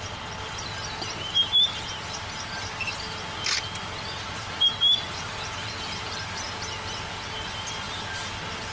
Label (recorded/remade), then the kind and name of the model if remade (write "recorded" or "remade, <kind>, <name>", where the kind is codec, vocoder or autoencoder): recorded